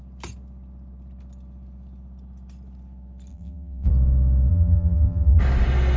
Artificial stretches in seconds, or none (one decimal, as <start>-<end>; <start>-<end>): 3.3-3.9; 4.5-5.4